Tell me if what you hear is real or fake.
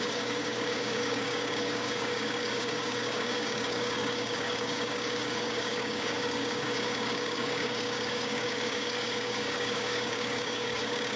fake